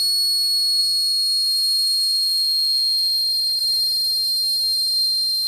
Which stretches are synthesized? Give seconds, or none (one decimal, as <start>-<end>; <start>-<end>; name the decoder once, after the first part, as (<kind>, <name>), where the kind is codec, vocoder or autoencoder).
0.8-3.6 (autoencoder, DAC-VAE)